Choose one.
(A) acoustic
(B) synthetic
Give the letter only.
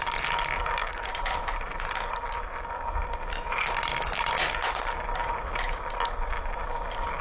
A